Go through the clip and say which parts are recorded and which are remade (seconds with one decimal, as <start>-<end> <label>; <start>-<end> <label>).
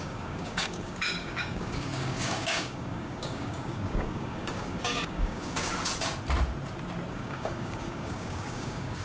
0.0-5.7 remade; 5.7-7.1 recorded; 7.1-9.0 remade